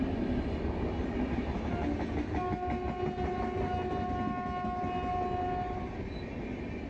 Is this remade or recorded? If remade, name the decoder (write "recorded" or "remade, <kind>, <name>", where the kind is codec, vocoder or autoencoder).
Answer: recorded